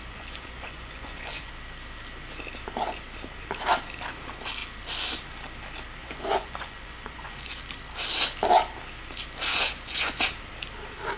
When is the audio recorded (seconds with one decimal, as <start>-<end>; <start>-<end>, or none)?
1.5-6.0; 7.6-9.5; 10.2-11.2